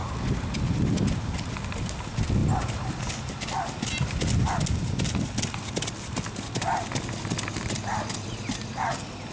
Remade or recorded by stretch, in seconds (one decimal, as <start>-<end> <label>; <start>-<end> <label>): 0.0-9.3 recorded